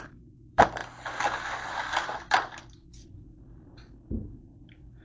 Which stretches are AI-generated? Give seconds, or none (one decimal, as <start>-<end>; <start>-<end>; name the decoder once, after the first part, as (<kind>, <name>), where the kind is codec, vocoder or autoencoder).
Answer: 0.0-0.8 (vocoder, BigVGAN v2); 2.2-5.0